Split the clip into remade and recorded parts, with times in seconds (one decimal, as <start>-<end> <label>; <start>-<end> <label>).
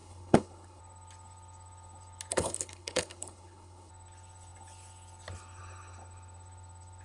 0.0-0.8 remade; 0.8-2.3 recorded; 2.3-3.9 remade; 3.9-7.0 recorded